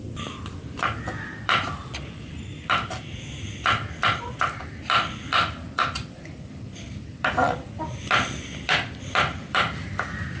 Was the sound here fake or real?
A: fake